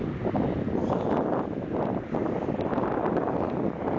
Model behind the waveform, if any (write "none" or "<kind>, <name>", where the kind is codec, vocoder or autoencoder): none